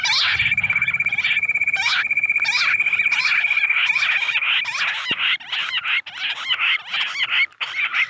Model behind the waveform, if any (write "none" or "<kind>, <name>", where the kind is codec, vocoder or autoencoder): none